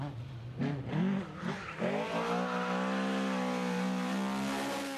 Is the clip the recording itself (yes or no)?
yes